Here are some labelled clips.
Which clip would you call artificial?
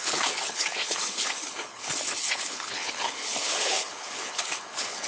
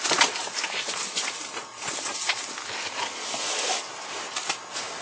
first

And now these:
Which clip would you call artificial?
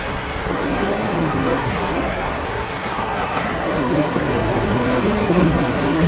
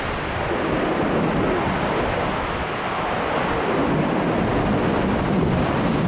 first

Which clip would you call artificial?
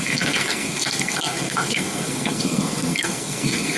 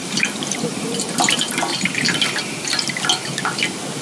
first